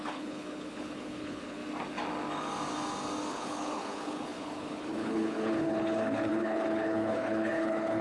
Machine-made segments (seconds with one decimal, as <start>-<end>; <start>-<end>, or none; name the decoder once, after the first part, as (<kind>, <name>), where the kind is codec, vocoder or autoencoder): 0.0-1.6 (codec, HILCodec); 3.3-8.0